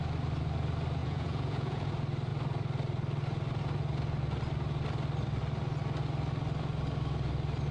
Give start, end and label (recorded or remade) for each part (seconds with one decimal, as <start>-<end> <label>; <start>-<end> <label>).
0.0-1.0 recorded; 1.0-1.9 remade; 1.9-7.7 recorded